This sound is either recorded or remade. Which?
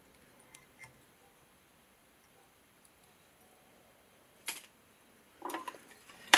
remade